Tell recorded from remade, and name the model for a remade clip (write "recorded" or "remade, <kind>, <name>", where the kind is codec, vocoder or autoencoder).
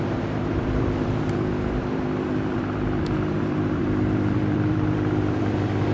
remade, vocoder, BigVGAN v2